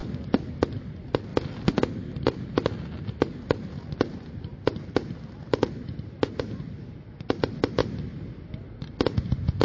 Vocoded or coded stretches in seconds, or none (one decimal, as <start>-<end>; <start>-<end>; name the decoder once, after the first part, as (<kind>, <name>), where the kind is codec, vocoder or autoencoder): none